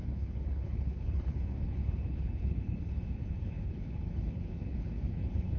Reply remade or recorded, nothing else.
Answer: remade